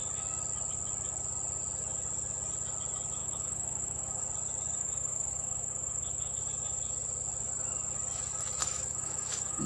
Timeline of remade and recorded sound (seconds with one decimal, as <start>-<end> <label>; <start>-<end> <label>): 0.0-3.2 recorded; 3.2-4.2 remade; 4.2-4.8 recorded; 4.8-6.4 remade; 6.4-8.6 recorded; 8.6-9.7 remade

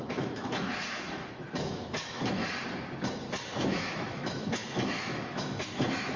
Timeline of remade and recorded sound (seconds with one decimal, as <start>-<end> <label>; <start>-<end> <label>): 0.0-2.4 remade; 2.4-3.3 recorded; 3.3-6.2 remade

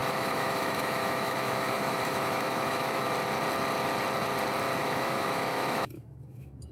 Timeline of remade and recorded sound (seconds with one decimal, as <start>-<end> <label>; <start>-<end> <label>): 0.0-3.1 remade; 3.1-4.8 recorded; 4.8-6.7 remade

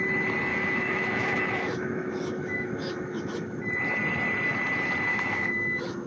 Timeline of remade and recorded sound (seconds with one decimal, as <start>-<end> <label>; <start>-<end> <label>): 0.0-0.5 recorded; 0.5-3.6 remade; 3.6-5.1 recorded; 5.1-6.1 remade

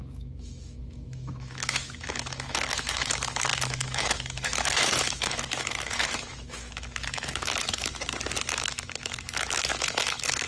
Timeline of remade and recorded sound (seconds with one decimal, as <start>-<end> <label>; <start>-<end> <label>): 0.0-7.9 remade; 7.9-8.5 recorded; 8.5-10.5 remade

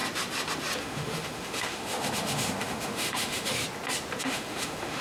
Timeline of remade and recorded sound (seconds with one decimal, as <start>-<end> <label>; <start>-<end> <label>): 0.0-0.8 recorded; 0.8-3.6 remade; 3.6-4.2 recorded; 4.2-5.0 remade